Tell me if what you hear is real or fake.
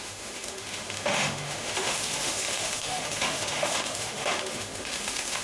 fake